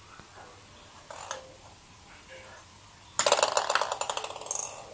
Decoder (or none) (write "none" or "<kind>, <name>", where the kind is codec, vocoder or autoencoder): none